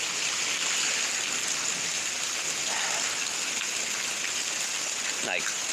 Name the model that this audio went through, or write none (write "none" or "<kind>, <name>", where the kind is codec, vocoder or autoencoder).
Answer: none